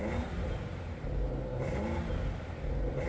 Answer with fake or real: real